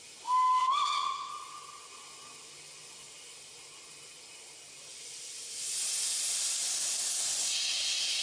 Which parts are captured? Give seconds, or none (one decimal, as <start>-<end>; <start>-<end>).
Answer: 0.0-0.6; 1.3-8.2